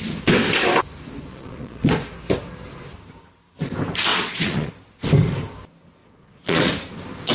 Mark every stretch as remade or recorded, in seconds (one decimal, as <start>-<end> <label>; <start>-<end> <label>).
0.0-1.3 recorded; 1.3-1.9 remade; 1.9-4.1 recorded; 4.1-4.7 remade; 4.7-6.0 recorded; 6.0-6.7 remade; 6.7-7.3 recorded